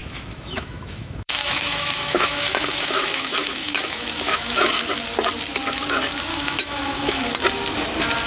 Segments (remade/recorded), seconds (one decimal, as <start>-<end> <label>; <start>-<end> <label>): 0.0-4.7 remade; 4.7-6.3 recorded; 6.3-7.3 remade; 7.3-8.3 recorded